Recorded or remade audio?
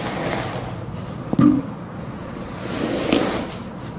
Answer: recorded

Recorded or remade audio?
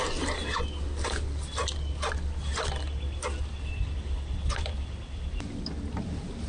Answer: recorded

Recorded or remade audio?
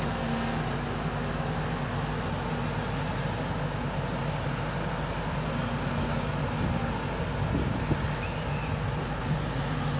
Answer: recorded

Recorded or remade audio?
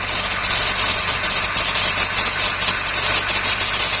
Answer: recorded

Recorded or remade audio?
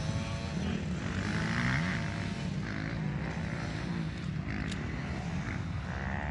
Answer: recorded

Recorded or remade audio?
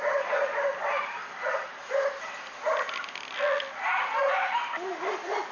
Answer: recorded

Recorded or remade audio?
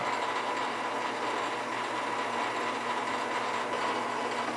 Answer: recorded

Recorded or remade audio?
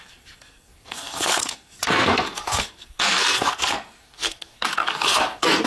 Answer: remade